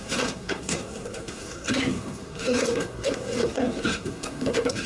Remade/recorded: remade